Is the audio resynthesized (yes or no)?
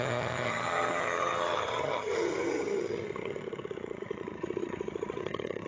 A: yes